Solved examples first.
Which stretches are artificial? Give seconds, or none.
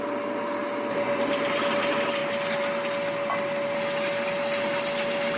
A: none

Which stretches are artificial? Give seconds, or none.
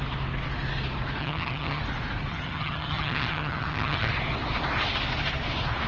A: 1.2-1.8; 2.3-4.1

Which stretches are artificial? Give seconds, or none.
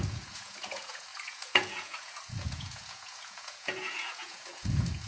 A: 0.0-5.1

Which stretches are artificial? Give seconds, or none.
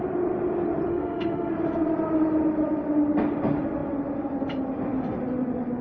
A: 0.9-1.5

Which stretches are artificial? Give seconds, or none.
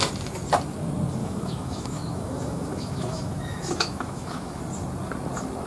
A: 1.2-4.6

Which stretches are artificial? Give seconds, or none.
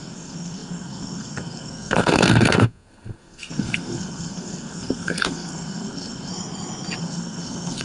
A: 0.0-6.3; 7.0-7.8